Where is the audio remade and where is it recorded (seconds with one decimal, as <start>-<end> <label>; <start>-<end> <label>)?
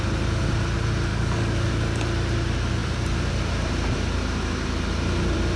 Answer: 0.0-1.1 recorded; 1.1-1.7 remade; 1.7-5.6 recorded